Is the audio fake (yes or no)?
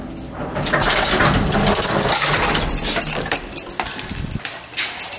no